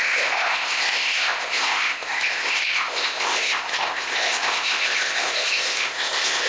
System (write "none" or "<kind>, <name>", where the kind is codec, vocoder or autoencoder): codec, ZipCodec